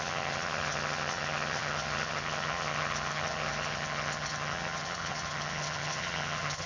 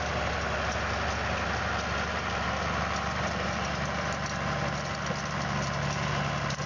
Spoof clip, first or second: first